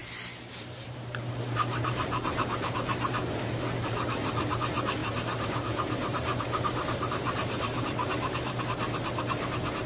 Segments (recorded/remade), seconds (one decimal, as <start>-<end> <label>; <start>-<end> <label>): 0.0-3.1 remade; 3.1-5.0 recorded; 5.0-8.6 remade; 8.6-9.9 recorded